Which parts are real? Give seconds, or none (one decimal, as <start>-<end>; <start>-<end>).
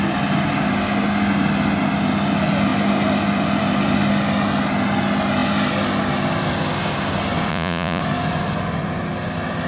0.0-7.5; 8.0-9.7